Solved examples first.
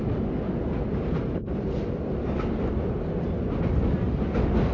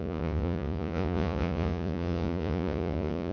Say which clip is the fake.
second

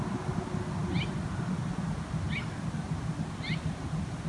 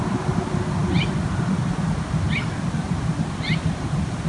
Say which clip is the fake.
second